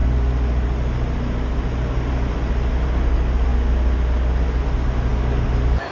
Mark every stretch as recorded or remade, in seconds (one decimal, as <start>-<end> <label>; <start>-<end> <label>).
0.0-5.9 recorded